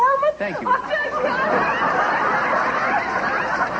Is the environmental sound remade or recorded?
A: recorded